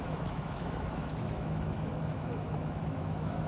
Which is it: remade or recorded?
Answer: remade